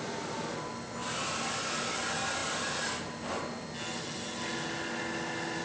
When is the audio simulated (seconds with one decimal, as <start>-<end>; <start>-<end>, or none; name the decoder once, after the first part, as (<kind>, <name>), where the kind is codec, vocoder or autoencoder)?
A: none